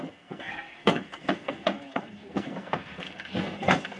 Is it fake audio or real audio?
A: fake